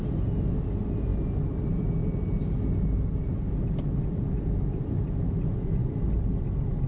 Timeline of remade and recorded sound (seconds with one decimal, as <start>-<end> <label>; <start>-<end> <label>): 0.0-6.9 recorded